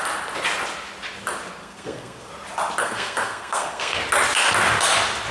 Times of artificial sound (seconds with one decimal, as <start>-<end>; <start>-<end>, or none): 1.6-2.3; 2.8-4.0